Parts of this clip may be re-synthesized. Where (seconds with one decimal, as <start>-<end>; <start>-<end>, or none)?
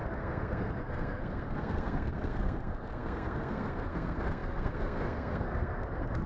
0.0-6.3